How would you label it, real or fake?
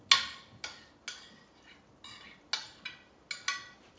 real